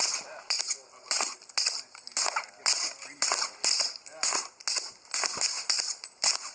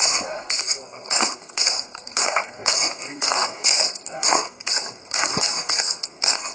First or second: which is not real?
second